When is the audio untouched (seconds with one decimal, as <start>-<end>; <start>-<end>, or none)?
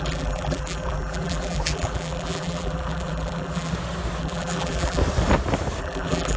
3.7-4.2; 5.0-5.8